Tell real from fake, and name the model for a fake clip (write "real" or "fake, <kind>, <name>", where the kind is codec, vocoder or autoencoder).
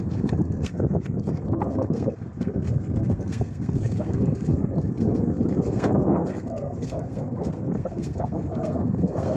fake, codec, SNAC